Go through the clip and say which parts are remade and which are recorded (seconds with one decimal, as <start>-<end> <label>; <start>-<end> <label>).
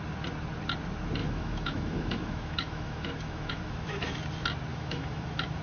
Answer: 0.0-1.2 recorded; 1.2-4.2 remade; 4.2-4.7 recorded; 4.7-5.6 remade